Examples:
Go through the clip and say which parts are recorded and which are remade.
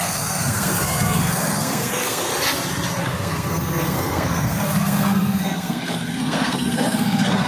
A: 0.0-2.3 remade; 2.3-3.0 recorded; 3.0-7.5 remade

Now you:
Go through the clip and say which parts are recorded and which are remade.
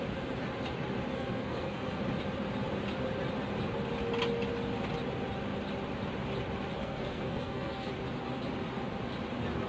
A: 0.0-1.1 recorded; 1.1-2.0 remade; 2.0-6.8 recorded; 6.8-7.9 remade; 7.9-9.7 recorded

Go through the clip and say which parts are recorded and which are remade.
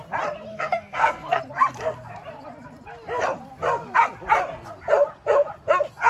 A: 0.0-0.5 recorded; 0.5-1.4 remade; 1.4-6.1 recorded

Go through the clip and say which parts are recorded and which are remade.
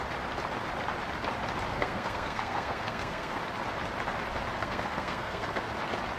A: 0.0-1.7 recorded; 1.7-3.4 remade; 3.4-4.6 recorded; 4.6-5.7 remade; 5.7-6.2 recorded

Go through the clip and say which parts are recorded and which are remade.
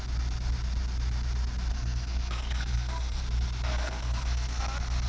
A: 0.0-1.7 recorded; 1.7-3.2 remade; 3.2-3.7 recorded; 3.7-4.6 remade; 4.6-5.1 recorded